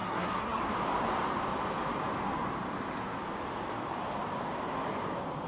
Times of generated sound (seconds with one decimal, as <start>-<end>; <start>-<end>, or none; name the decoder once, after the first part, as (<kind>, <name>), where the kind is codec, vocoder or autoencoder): 0.0-0.6 (codec, SNAC)